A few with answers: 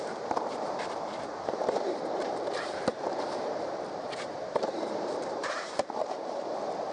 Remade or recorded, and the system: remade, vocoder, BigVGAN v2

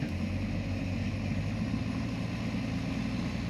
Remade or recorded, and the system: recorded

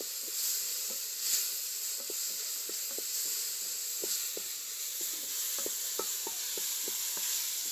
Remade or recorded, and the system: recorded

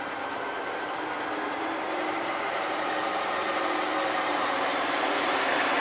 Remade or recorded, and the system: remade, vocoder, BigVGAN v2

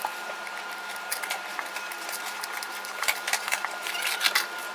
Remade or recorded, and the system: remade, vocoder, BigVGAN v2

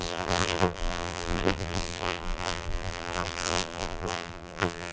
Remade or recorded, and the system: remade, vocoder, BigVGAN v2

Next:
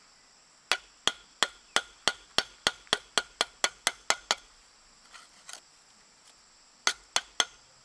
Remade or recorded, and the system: recorded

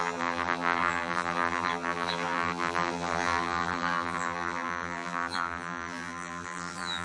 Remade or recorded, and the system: remade, vocoder, BigVGAN v2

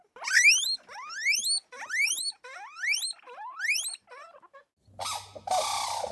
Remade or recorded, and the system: recorded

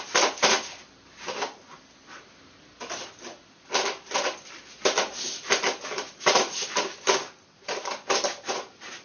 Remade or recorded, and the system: recorded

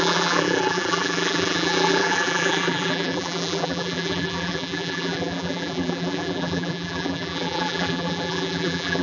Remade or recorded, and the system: remade, vocoder, BigVGAN v2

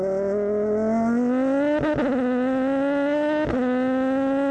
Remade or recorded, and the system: recorded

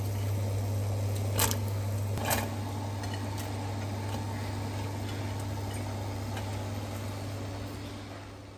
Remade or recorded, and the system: recorded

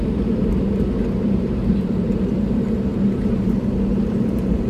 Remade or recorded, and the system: remade, vocoder, BigVGAN v2